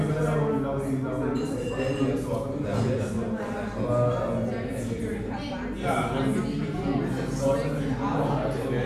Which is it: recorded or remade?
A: recorded